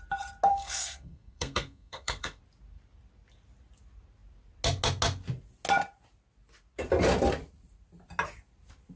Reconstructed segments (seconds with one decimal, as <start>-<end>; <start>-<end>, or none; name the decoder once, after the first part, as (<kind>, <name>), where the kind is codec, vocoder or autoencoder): 0.5-2.4 (codec, SNAC)